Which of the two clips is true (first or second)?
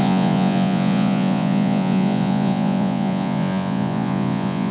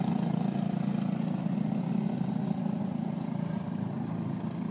second